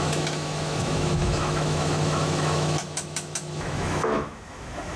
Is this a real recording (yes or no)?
no